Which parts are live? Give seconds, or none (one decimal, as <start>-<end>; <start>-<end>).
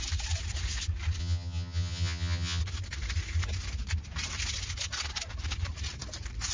0.0-1.2; 2.6-6.5